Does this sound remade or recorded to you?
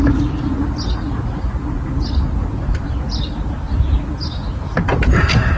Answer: recorded